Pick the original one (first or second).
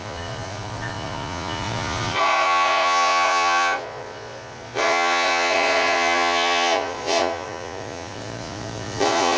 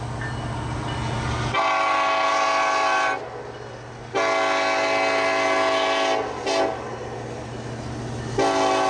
second